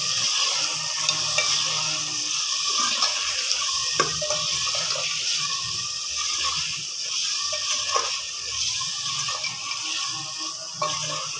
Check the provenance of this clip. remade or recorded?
recorded